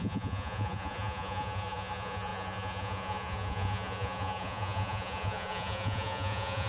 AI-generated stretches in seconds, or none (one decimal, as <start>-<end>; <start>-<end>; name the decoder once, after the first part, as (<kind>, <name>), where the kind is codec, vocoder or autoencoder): 0.0-6.7 (vocoder, Vocos)